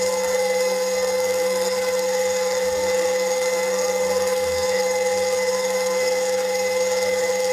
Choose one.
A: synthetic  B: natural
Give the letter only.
A